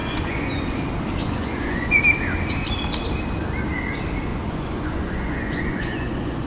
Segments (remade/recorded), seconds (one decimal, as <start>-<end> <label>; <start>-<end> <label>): 0.0-0.6 remade; 0.6-1.2 recorded; 1.2-2.0 remade; 2.0-4.3 recorded; 4.3-6.5 remade